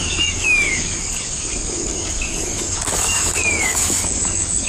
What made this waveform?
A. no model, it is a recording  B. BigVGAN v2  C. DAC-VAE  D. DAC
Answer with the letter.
D